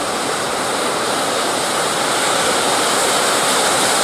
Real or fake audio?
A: fake